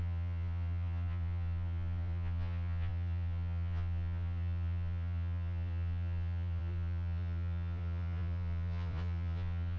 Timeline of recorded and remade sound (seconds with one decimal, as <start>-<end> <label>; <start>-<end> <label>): 0.0-9.8 remade